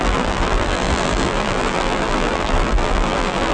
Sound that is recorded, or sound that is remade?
remade